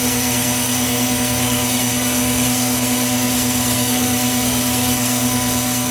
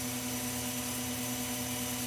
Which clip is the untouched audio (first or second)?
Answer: second